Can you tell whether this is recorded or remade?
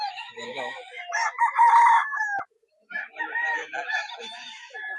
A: recorded